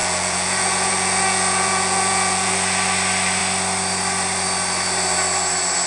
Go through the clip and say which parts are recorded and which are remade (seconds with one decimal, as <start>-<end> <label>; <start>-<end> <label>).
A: 0.0-2.5 remade; 2.5-5.9 recorded